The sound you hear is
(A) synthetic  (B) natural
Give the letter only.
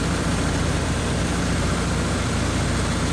B